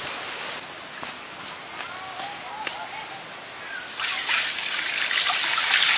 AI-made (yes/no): no